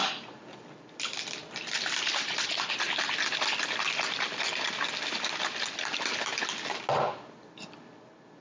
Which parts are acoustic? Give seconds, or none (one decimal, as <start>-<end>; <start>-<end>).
0.0-1.4; 3.7-8.4